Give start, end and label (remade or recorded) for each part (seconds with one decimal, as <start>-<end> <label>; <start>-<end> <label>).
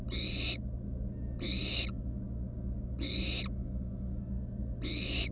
0.0-5.3 recorded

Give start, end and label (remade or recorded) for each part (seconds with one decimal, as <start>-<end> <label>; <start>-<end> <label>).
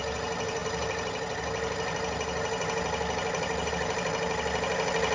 0.0-5.1 recorded